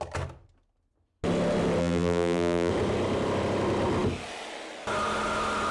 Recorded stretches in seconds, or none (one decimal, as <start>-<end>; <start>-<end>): 0.0-1.8; 2.7-5.7